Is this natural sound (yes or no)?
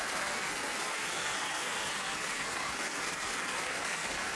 no